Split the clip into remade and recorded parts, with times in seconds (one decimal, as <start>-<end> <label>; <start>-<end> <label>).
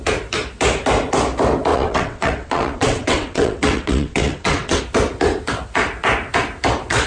0.0-1.7 recorded; 1.7-4.8 remade; 4.8-7.1 recorded